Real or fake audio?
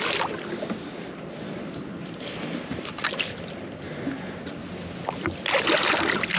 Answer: real